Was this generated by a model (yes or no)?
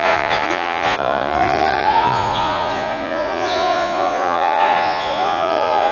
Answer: yes